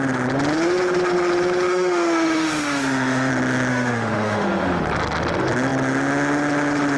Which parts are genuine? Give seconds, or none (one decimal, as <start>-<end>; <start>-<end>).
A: 0.0-1.7; 3.3-3.7; 4.8-7.0